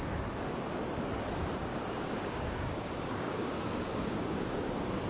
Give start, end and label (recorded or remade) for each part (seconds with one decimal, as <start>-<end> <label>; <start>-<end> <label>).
0.0-1.7 recorded; 1.7-5.1 remade